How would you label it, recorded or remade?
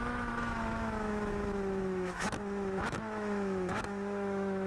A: remade